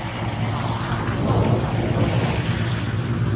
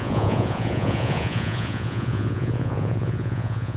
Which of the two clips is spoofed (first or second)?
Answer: second